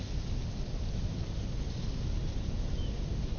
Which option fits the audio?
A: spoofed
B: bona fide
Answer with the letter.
B